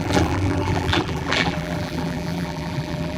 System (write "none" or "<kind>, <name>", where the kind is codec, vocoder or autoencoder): vocoder, BigVGAN v2